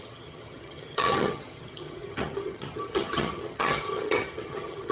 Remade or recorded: remade